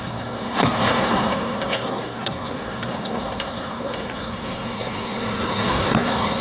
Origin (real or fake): fake